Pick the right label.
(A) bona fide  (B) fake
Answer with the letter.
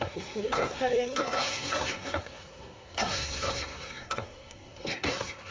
B